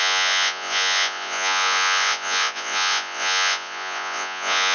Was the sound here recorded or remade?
remade